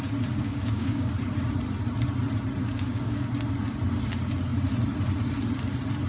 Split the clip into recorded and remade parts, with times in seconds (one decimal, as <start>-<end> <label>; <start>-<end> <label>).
0.0-0.4 recorded; 0.4-1.1 remade; 1.1-2.6 recorded; 2.6-3.3 remade; 3.3-6.1 recorded